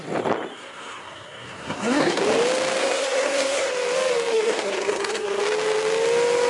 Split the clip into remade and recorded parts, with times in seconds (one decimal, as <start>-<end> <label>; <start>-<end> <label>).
0.0-0.5 recorded; 0.5-2.2 remade; 2.2-2.8 recorded; 2.8-3.7 remade; 3.7-4.3 recorded; 4.3-5.4 remade; 5.4-6.5 recorded